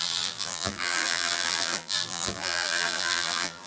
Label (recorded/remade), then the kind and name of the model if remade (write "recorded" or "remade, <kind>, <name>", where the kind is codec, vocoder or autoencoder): remade, vocoder, BigVGAN v2